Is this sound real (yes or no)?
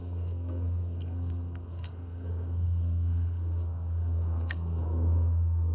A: no